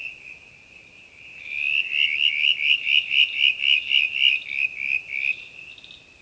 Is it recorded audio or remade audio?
recorded